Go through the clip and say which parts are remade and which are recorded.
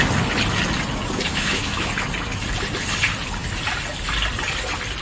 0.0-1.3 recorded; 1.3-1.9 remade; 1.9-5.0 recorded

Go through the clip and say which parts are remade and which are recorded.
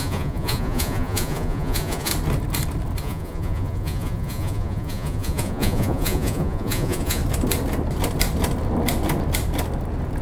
0.0-2.1 remade; 2.1-3.0 recorded; 3.0-7.2 remade; 7.2-10.2 recorded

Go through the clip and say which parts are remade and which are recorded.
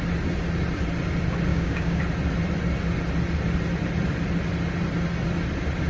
0.0-1.5 recorded; 1.5-2.0 remade; 2.0-5.9 recorded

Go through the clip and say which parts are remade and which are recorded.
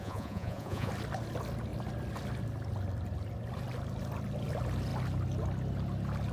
0.0-0.9 remade; 0.9-6.3 recorded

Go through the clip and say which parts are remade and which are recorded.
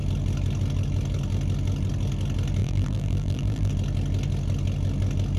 0.0-2.6 recorded; 2.6-3.7 remade; 3.7-5.4 recorded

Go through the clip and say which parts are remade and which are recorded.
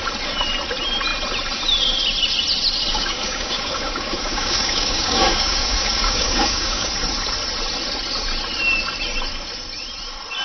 0.0-2.9 recorded; 2.9-6.9 remade; 6.9-10.4 recorded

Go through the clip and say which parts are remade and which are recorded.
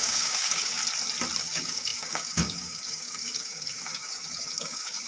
0.0-0.8 remade; 0.8-1.4 recorded; 1.4-5.1 remade